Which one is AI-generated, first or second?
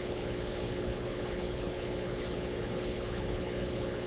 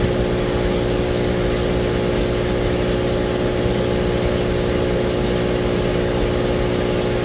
first